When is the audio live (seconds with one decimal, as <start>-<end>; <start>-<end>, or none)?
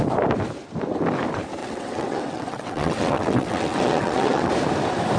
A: 0.0-1.6; 4.5-5.2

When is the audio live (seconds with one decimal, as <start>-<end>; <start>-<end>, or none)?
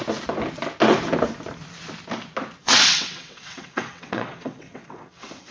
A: 0.0-2.6